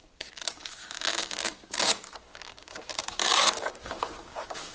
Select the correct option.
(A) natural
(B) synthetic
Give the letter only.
B